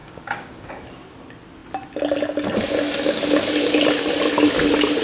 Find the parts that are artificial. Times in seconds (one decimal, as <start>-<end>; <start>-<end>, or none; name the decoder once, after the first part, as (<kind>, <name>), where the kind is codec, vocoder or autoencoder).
0.0-0.7 (codec, DAC)